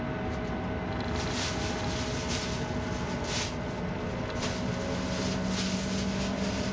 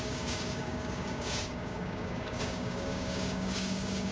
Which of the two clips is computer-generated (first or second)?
second